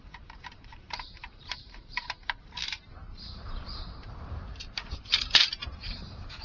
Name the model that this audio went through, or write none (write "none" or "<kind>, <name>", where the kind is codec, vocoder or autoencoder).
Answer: vocoder, BigVGAN v2